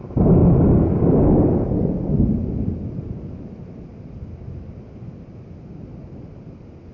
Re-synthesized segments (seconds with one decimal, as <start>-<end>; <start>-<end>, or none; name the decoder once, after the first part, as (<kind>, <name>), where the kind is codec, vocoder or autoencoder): none